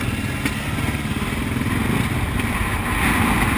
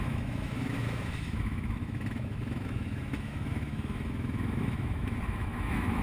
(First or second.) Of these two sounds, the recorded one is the first